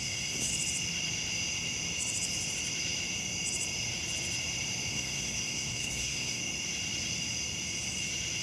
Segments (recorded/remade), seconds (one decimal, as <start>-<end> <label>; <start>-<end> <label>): 0.0-0.5 remade; 0.5-4.9 recorded; 4.9-6.4 remade; 6.4-8.4 recorded